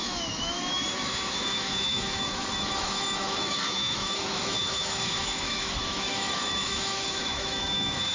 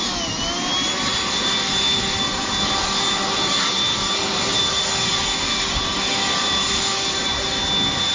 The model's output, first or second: first